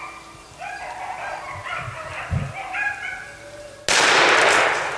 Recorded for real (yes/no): yes